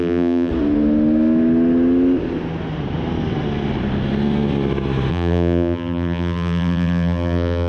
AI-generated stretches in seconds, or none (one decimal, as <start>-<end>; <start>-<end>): 0.0-0.5; 5.1-7.7